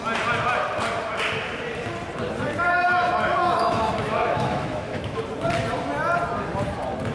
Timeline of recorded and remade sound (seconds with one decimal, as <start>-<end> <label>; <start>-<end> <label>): 0.0-3.4 recorded; 3.4-5.2 remade; 5.2-7.1 recorded

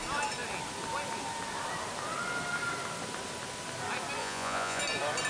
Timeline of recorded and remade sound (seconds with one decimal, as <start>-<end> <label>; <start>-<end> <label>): 0.0-4.2 recorded; 4.2-4.8 remade; 4.8-5.3 recorded